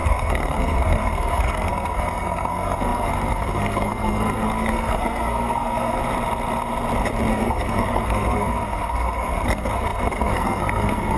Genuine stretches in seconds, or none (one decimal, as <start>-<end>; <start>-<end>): 6.0-7.3